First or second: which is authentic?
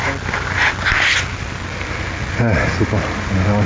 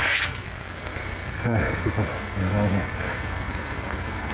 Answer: first